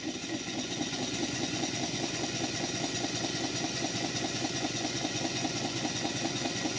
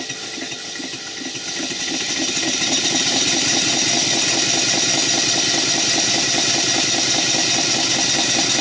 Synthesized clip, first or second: first